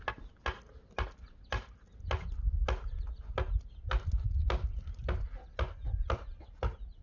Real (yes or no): yes